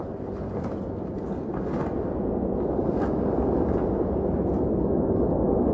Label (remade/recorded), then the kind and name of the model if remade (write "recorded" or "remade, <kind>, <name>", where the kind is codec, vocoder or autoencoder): recorded